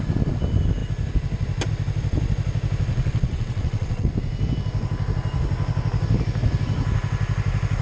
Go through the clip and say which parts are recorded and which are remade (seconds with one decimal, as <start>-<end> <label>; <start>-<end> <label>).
0.0-2.9 recorded; 2.9-4.1 remade; 4.1-7.8 recorded